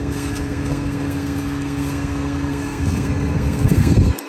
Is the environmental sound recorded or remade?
remade